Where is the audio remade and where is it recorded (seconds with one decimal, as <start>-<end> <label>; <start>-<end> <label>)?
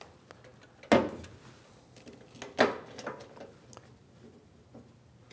0.0-5.3 recorded